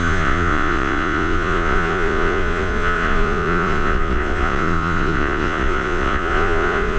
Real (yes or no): no